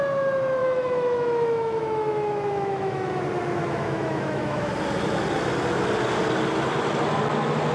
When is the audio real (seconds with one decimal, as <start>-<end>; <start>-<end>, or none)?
0.0-0.6; 3.2-3.6; 4.7-7.7